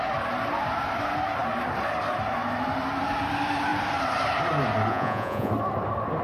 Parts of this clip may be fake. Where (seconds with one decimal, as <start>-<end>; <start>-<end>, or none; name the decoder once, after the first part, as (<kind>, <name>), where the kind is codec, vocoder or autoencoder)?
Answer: 4.9-5.5 (vocoder, Vocos)

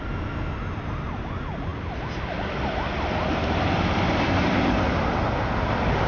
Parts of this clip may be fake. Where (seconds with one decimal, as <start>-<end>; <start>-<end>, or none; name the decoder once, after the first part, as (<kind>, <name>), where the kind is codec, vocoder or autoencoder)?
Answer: none

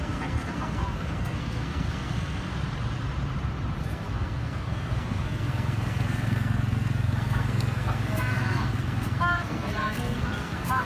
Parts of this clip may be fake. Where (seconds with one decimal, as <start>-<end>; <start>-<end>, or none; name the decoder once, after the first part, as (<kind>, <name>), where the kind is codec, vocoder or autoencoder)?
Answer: 0.0-2.5 (codec, SNAC); 3.8-10.9

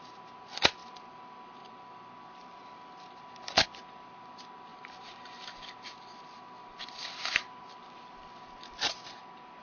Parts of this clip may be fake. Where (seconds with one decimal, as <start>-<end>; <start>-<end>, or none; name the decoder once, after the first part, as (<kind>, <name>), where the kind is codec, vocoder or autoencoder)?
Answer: 4.7-5.9 (vocoder, BigVGAN v2); 6.6-8.9

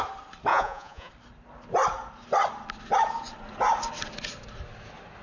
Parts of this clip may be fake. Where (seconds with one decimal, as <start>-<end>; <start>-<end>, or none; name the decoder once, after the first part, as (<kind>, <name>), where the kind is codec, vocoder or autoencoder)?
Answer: 0.5-1.1 (vocoder, Vocos)

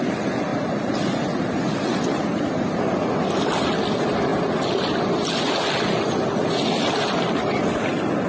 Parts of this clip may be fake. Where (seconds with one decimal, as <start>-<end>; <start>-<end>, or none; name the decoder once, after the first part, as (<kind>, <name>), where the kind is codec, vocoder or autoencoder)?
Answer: none

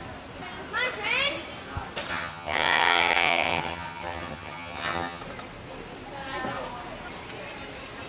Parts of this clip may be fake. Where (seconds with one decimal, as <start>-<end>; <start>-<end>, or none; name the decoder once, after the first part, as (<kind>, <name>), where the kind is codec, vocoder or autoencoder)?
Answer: 2.1-5.2 (vocoder, HiFi-GAN)